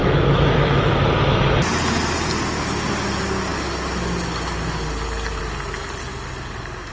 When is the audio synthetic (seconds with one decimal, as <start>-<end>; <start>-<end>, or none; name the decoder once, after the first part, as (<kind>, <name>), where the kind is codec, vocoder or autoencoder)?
0.0-0.9 (autoencoder, DAC-VAE)